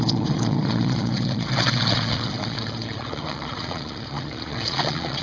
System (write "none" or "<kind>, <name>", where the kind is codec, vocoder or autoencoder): vocoder, Vocos